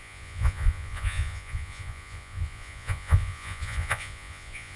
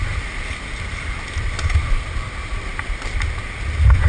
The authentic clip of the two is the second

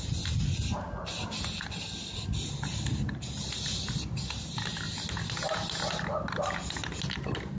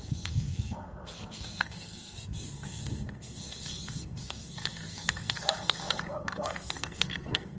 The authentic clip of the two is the first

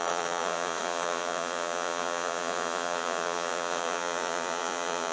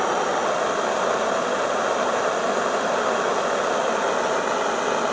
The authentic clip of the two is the second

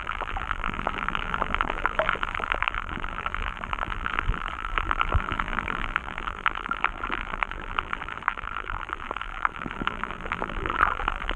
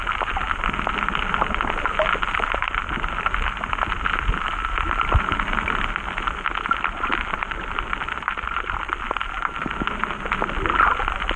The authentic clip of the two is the second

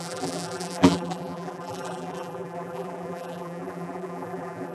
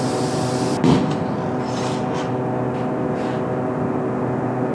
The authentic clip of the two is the second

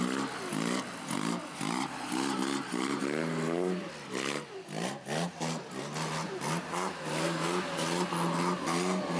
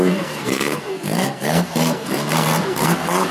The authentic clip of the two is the first